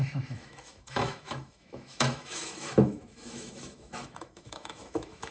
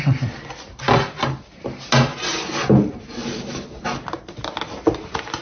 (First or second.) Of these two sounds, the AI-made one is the first